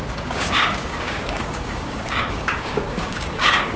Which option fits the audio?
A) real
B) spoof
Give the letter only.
B